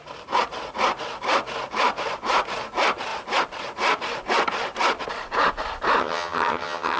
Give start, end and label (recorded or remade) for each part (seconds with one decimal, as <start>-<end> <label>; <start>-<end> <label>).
0.0-6.0 recorded; 6.0-7.0 remade